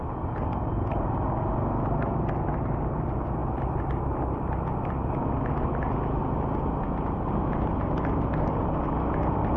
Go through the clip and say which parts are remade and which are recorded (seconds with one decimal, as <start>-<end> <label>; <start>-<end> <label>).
0.0-9.6 recorded